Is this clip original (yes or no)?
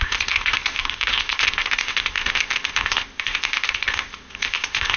no